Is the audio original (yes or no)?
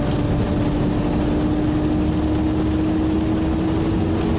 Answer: yes